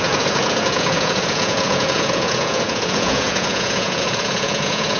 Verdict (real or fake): fake